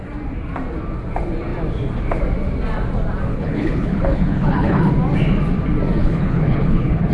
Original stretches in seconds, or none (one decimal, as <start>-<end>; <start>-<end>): 0.0-3.3; 4.9-6.0